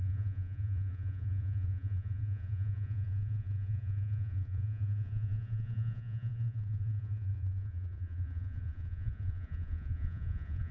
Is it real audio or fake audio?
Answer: fake